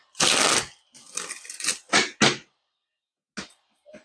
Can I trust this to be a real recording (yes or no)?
yes